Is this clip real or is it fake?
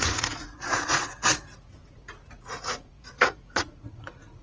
fake